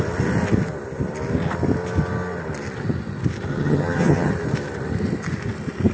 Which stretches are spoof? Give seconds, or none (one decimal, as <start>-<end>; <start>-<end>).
3.5-4.3